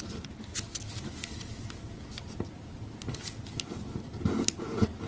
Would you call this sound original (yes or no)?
yes